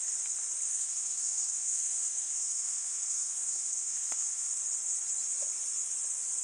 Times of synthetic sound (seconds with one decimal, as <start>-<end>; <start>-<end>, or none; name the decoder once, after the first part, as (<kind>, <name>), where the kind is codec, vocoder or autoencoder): 0.7-4.5 (codec, SNAC)